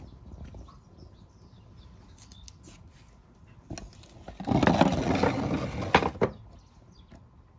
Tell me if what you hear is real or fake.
real